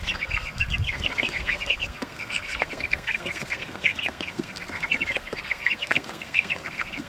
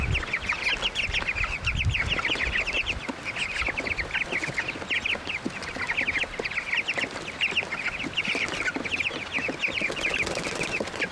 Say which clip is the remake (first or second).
first